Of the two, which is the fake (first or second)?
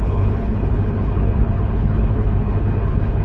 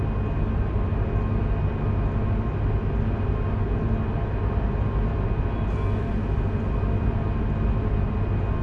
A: first